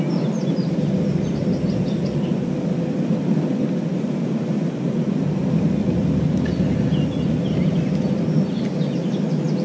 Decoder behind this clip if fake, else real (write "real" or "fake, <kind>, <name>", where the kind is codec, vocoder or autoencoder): real